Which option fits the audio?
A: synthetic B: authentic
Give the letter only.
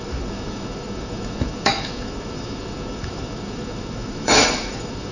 A